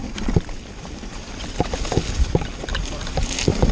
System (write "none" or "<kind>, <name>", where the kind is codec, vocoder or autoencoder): none